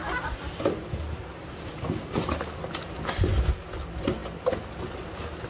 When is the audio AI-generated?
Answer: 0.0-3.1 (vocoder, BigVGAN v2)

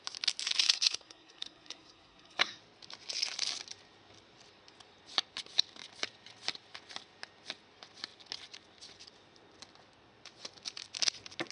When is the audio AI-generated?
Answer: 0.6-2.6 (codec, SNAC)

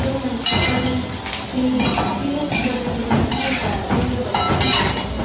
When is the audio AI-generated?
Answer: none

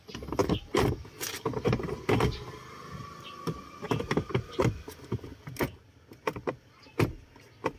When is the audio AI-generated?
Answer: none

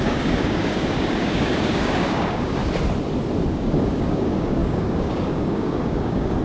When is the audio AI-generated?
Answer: 0.0-2.6 (codec, DAC); 3.5-6.4

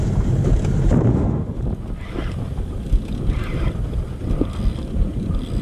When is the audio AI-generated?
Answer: 1.1-1.6 (autoencoder, DAC-VAE)

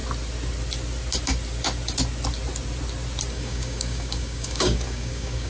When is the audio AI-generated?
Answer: 3.3-5.5 (codec, DAC)